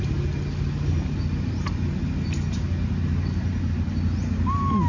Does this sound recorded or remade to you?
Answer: recorded